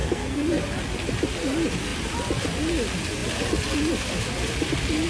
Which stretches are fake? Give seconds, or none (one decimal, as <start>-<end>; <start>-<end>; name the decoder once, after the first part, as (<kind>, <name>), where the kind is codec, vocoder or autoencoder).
0.0-0.6 (codec, SNAC)